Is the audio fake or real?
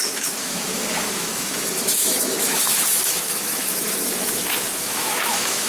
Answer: fake